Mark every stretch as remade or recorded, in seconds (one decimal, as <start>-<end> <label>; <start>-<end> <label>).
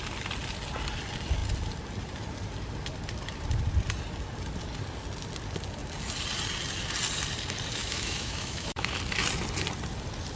0.0-7.8 recorded; 7.8-9.0 remade; 9.0-10.4 recorded